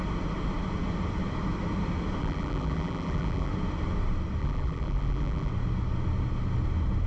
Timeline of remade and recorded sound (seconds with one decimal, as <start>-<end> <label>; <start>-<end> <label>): 0.0-2.2 recorded; 2.2-3.5 remade; 3.5-4.4 recorded; 4.4-5.5 remade; 5.5-7.1 recorded